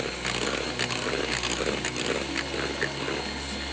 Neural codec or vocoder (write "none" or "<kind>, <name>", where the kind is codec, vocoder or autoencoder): none